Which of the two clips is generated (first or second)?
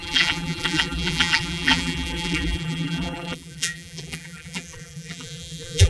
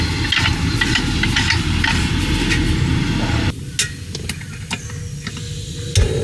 first